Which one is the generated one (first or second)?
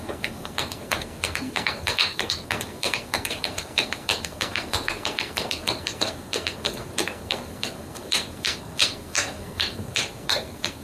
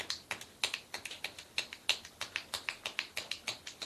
first